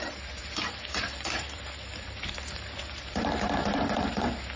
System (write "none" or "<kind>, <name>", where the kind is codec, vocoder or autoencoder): vocoder, BigVGAN v2